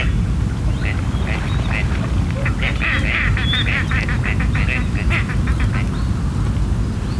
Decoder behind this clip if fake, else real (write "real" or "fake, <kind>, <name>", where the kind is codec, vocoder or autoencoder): real